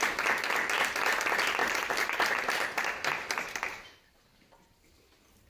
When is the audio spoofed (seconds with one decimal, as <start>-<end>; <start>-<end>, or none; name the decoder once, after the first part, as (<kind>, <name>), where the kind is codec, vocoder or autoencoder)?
1.6-4.9 (vocoder, BigVGAN v2)